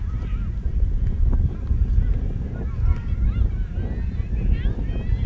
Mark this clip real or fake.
real